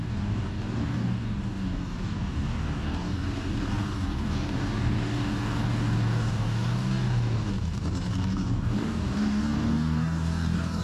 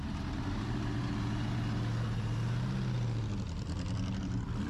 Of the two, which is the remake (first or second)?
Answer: first